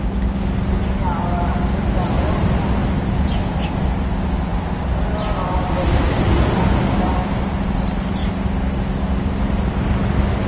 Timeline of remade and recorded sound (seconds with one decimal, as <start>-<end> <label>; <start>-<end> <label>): 0.0-10.5 recorded